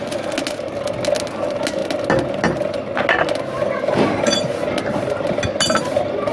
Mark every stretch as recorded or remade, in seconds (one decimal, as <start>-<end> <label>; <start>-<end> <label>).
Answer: 0.0-6.3 recorded